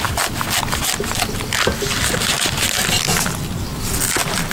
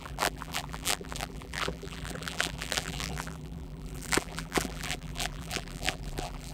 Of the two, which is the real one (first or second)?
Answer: first